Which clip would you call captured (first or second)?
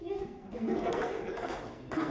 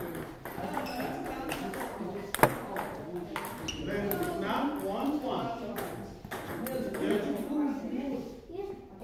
second